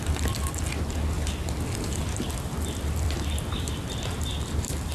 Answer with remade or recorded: remade